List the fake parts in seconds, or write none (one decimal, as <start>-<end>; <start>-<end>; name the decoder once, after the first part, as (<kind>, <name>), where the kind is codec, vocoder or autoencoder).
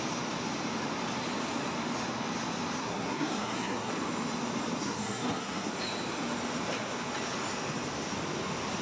2.8-3.9 (codec, SNAC); 4.8-5.7